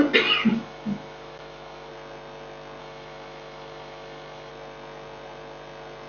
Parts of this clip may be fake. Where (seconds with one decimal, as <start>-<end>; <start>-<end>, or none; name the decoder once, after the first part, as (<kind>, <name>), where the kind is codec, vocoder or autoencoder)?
0.5-1.9 (autoencoder, DAC-VAE); 2.8-4.5